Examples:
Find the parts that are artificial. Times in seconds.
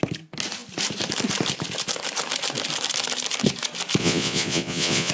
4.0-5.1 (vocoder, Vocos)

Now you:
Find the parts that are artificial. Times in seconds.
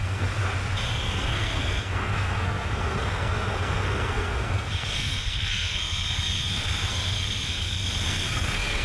0.0-0.4 (codec, SNAC); 0.9-8.8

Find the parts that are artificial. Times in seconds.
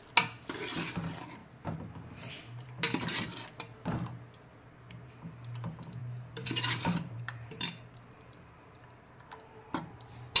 6.0-9.1 (vocoder, BigVGAN v2)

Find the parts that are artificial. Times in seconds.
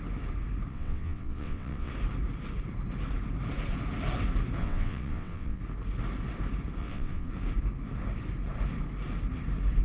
0.7-1.9 (vocoder, WaveNeXt); 4.6-5.6; 6.8-7.3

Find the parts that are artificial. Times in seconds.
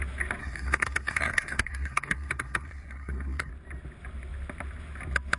0.4-3.5 (codec, SNAC)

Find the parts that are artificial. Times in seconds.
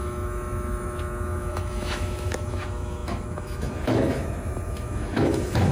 0.0-5.7 (autoencoder, DAC-VAE)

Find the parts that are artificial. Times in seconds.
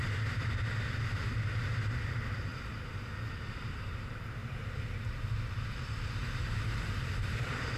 0.0-2.5 (vocoder, BigVGAN v2); 3.3-4.4; 5.5-7.8